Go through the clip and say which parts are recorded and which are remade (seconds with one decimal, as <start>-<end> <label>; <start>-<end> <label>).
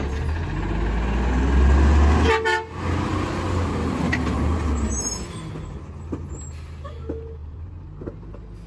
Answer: 0.0-3.1 recorded; 3.1-4.9 remade; 4.9-7.4 recorded; 7.4-8.1 remade; 8.1-8.7 recorded